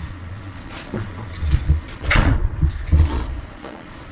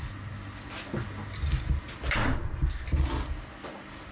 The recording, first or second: second